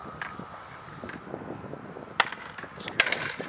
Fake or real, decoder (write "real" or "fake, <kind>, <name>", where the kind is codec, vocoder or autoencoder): real